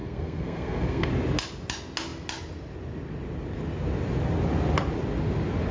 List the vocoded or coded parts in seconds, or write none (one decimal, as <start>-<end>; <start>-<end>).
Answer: 0.0-1.1